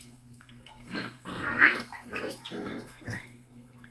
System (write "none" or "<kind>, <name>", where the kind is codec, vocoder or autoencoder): codec, SNAC